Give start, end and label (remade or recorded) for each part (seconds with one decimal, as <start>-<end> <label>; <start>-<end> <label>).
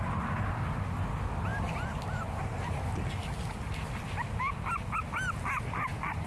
0.0-6.3 recorded